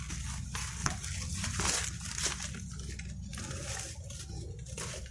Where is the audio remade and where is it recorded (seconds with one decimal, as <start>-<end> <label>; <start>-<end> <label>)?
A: 0.0-5.1 recorded